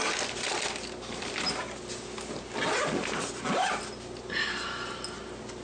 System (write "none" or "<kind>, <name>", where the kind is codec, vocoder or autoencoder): none